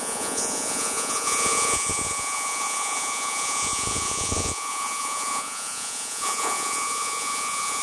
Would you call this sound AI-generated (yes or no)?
yes